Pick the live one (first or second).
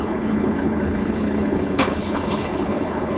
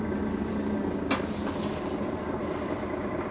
second